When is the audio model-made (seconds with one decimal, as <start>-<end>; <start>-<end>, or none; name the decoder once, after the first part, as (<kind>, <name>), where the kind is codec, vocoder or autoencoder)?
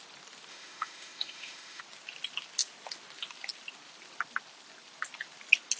0.5-1.8 (autoencoder, DAC-VAE)